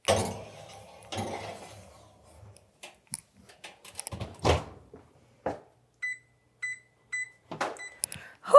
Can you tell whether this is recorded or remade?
recorded